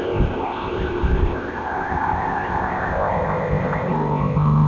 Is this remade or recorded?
remade